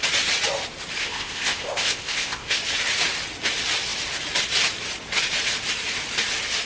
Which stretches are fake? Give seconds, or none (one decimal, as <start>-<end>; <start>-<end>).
1.0-2.6